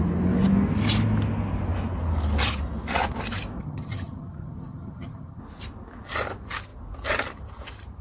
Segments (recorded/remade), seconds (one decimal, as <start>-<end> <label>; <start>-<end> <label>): 0.0-3.6 recorded; 3.6-5.4 remade; 5.4-8.0 recorded